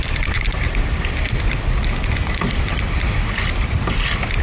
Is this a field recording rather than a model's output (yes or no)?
yes